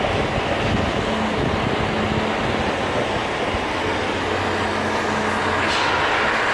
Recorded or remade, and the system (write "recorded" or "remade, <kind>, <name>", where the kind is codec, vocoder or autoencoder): recorded